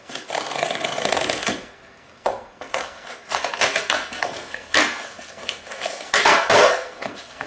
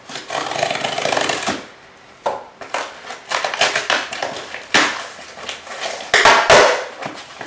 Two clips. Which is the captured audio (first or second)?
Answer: second